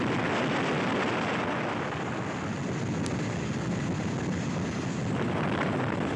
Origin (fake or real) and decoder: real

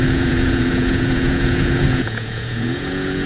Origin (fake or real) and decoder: fake, vocoder, Vocos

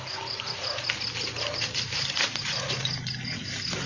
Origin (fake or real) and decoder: real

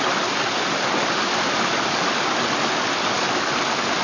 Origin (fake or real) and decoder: real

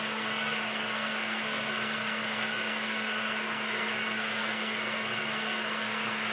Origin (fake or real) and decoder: fake, codec, SNAC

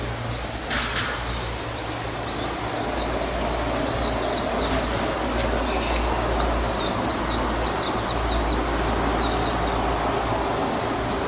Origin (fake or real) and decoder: real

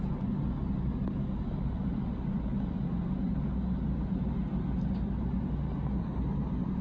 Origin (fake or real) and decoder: real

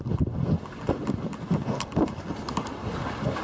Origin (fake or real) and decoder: real